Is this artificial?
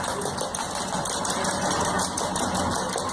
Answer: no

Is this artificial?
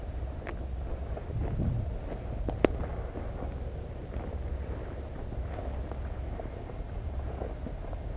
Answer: no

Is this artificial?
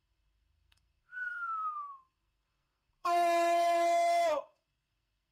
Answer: yes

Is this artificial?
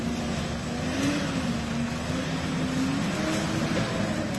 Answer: no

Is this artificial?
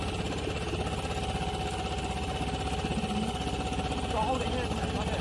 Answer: no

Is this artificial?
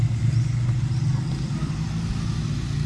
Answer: no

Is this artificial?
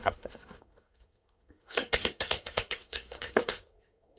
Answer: yes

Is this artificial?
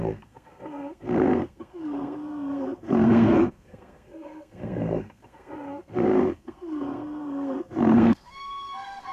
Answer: yes